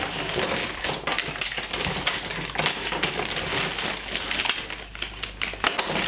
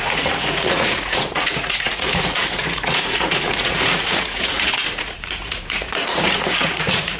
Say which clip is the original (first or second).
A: first